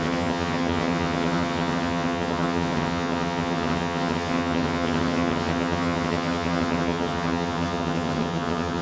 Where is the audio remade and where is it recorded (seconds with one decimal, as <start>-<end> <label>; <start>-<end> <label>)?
0.0-8.8 remade